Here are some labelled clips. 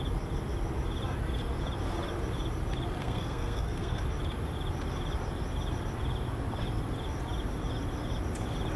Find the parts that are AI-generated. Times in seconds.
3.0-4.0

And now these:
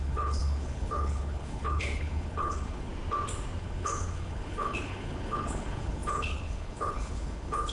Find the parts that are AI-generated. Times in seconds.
0.0-2.9; 3.6-7.7

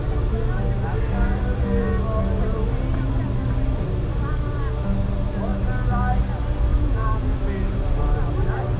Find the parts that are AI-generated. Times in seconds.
6.7-7.4

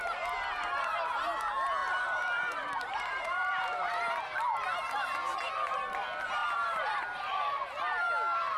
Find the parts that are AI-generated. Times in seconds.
1.8-4.2; 6.4-7.2

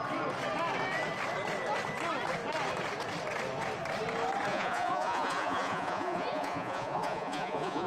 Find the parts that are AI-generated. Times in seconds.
4.5-7.9

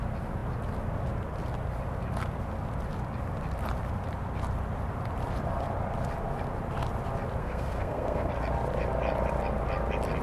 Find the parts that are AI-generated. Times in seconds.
7.4-8.3

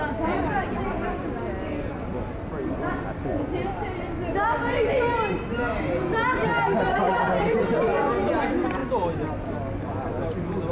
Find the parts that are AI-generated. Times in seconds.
none